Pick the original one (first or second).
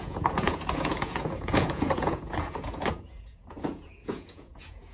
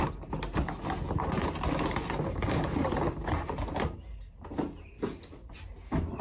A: second